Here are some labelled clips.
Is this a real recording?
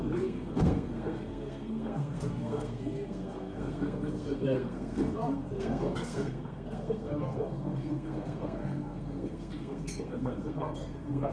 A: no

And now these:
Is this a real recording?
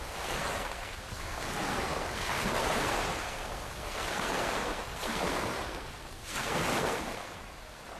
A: no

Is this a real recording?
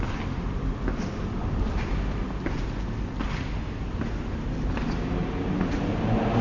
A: yes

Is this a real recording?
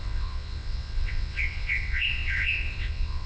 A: no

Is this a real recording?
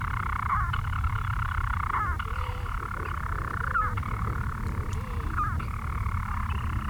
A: no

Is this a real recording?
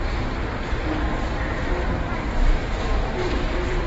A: no